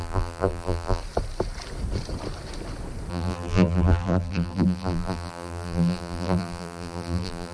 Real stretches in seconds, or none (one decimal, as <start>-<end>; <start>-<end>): 1.0-3.1